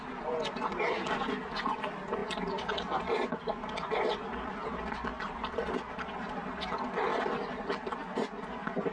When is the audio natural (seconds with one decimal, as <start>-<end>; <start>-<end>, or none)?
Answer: 0.0-5.1; 5.7-7.1; 7.9-8.9

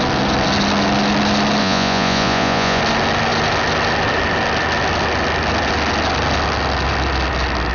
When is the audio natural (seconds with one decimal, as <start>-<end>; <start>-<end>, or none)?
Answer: 0.0-1.6; 2.8-7.7

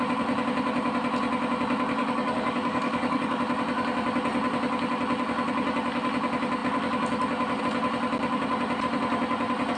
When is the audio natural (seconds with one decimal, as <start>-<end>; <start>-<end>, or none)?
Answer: 0.0-2.0; 3.4-9.8

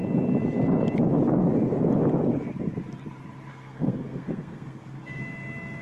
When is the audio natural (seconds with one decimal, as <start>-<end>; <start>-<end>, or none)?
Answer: 0.0-3.5; 5.2-5.8